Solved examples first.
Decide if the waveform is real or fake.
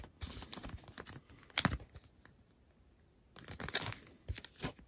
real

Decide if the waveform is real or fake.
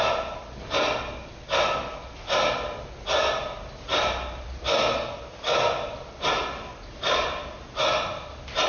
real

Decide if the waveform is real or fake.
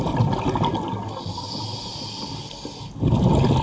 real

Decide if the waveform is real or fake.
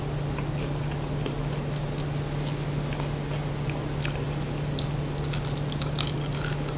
real